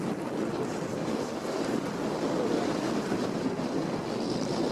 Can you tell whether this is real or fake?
real